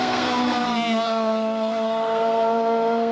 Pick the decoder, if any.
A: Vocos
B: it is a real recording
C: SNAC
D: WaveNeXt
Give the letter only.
C